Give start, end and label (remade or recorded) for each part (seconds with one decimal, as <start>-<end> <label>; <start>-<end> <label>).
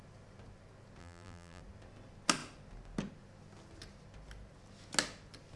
0.0-1.0 recorded; 1.0-1.6 remade; 1.6-5.6 recorded